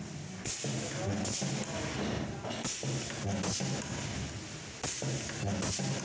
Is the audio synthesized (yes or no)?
no